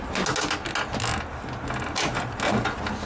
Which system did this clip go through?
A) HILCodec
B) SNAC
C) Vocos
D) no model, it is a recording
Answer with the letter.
D